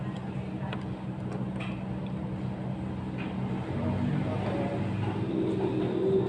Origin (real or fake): real